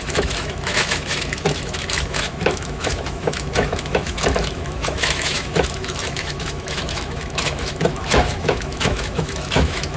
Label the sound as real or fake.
fake